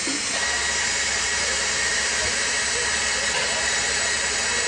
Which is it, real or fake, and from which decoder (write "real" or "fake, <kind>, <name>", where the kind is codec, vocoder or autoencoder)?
fake, vocoder, BigVGAN v2